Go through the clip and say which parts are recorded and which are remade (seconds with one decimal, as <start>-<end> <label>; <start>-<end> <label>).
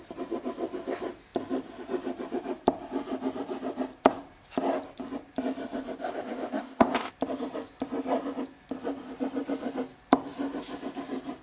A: 0.0-6.0 recorded; 6.0-7.1 remade; 7.1-11.4 recorded